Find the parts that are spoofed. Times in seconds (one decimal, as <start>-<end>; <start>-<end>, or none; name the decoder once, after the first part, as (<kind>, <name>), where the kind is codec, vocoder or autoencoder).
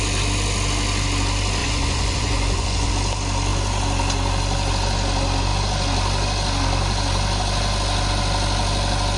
1.6-2.9 (vocoder, Vocos)